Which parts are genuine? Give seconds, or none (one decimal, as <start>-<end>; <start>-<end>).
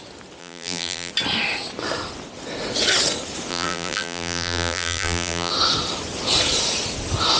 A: 0.0-0.4; 1.1-3.5; 5.5-7.4